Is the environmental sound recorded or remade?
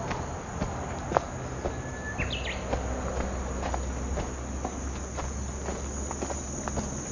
recorded